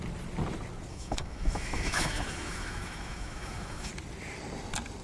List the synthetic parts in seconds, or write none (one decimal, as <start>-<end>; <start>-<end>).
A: 0.9-3.9